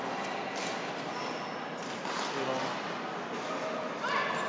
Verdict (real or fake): real